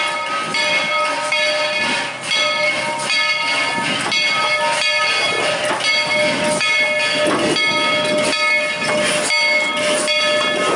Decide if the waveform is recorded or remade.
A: recorded